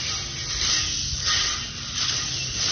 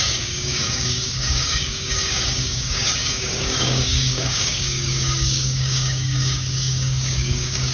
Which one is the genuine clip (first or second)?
first